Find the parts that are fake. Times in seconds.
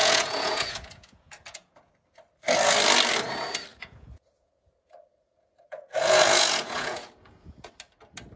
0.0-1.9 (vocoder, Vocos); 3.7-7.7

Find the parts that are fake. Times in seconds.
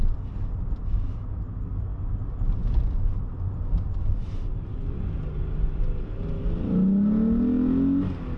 none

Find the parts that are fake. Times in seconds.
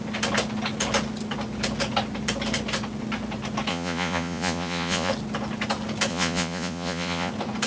3.7-5.1 (vocoder, Vocos); 6.1-7.3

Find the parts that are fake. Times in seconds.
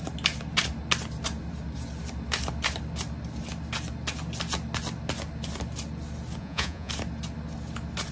6.4-6.9 (vocoder, Vocos)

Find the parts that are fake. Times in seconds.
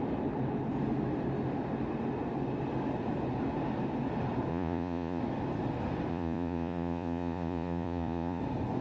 4.5-5.2 (vocoder, Vocos); 6.1-8.4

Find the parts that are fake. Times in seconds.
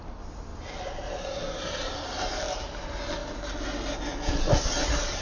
none